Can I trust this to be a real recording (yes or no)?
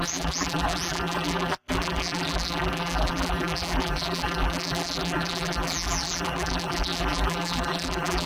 no